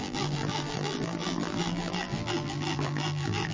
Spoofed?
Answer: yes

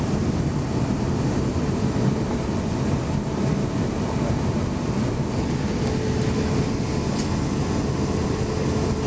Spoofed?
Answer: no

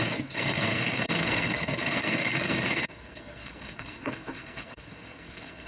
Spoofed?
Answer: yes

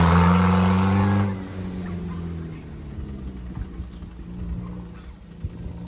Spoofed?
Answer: no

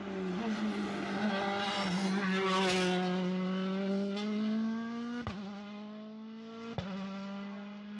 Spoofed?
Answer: no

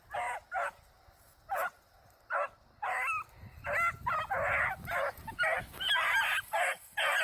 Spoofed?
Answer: no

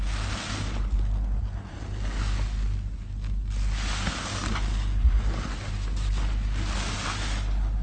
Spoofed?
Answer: no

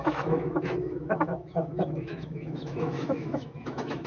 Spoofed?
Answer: yes